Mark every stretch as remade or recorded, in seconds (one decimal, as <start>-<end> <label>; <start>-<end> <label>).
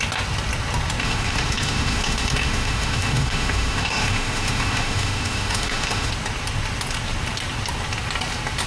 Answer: 0.0-1.0 recorded; 1.0-6.1 remade; 6.1-8.7 recorded